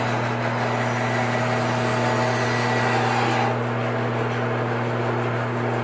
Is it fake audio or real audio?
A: real